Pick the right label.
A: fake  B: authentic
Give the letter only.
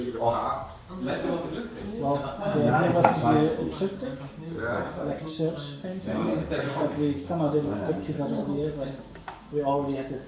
A